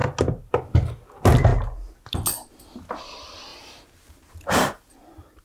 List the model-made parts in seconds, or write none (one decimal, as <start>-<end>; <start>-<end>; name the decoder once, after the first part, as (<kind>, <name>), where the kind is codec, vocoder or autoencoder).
3.5-4.9 (vocoder, BigVGAN v2)